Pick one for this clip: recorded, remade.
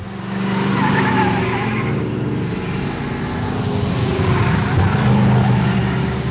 recorded